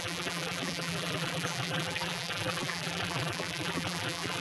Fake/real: fake